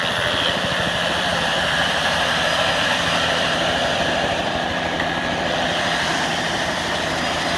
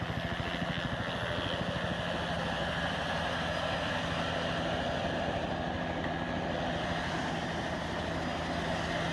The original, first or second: second